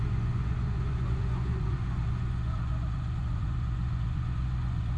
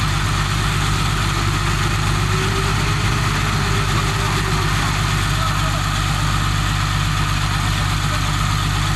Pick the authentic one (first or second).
second